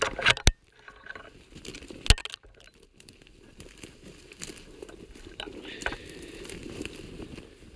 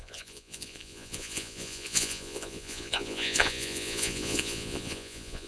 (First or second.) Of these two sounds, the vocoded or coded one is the second